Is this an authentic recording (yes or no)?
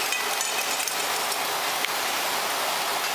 yes